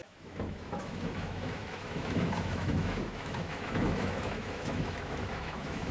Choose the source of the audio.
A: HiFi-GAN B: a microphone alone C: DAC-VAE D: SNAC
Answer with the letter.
C